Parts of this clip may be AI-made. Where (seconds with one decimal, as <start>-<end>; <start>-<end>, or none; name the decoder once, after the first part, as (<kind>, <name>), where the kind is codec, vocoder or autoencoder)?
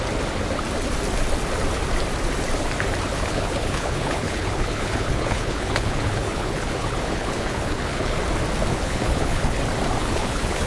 3.1-8.2 (codec, HILCodec); 8.7-9.6; 10.0-10.7